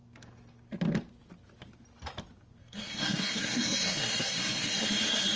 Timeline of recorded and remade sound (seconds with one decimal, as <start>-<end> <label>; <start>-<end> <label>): 0.0-2.6 recorded; 2.6-5.4 remade